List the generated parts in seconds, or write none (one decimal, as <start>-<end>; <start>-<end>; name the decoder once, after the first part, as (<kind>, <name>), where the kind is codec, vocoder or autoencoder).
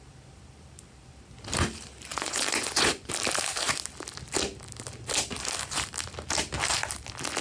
2.1-3.1 (vocoder, Vocos)